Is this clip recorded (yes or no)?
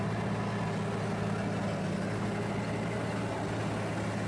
yes